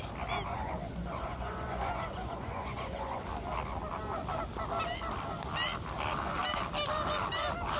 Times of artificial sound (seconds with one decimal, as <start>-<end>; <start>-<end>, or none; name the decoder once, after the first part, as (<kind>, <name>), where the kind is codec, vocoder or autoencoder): 0.5-3.2 (vocoder, Vocos)